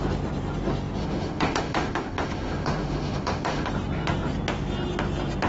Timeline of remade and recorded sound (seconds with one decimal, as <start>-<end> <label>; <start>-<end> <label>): 0.0-1.0 recorded; 1.0-3.7 remade; 3.7-5.5 recorded